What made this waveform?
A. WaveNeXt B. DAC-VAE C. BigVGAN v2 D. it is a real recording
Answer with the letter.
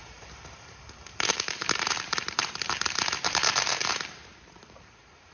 C